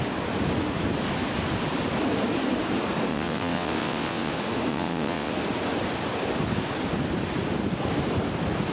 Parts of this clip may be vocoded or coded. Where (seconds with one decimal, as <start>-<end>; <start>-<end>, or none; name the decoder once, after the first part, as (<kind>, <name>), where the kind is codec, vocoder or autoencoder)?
3.1-4.3 (vocoder, WaveNeXt); 4.7-5.3